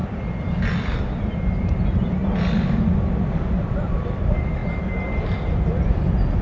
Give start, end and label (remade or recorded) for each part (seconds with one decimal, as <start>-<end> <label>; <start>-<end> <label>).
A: 0.0-1.5 recorded; 1.5-2.2 remade; 2.2-3.3 recorded; 3.3-4.6 remade; 4.6-5.2 recorded; 5.2-6.4 remade